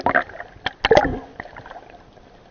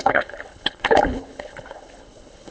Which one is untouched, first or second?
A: first